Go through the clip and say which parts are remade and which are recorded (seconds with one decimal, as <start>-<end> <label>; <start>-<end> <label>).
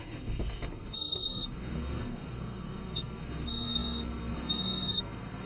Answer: 0.0-5.5 remade